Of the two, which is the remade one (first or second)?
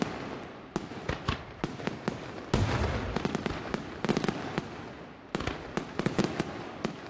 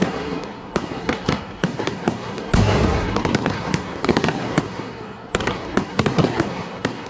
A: second